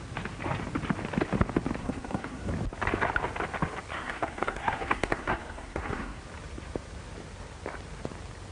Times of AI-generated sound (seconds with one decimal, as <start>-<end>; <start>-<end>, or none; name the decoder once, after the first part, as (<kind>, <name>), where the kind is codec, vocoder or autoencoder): 1.8-2.5 (codec, SNAC); 3.9-6.2